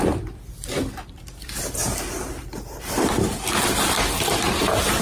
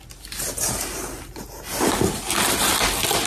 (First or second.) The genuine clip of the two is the second